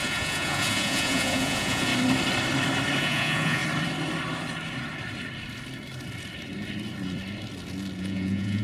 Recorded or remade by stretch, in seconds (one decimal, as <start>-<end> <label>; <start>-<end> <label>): 0.0-1.9 remade; 1.9-3.0 recorded; 3.0-3.6 remade; 3.6-8.0 recorded; 8.0-8.6 remade